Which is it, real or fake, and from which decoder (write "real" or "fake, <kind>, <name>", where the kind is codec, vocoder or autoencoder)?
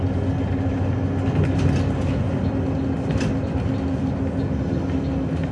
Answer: real